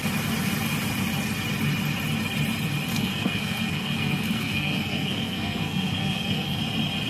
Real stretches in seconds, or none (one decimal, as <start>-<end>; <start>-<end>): 0.0-2.9; 6.6-7.1